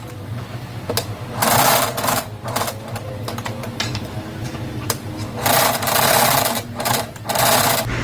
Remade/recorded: recorded